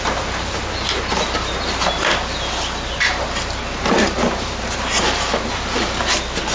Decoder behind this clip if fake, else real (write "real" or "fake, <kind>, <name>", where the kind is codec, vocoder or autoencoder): real